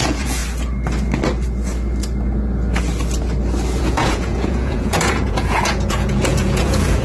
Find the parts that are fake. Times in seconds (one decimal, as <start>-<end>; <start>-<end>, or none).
0.0-0.4; 3.8-7.0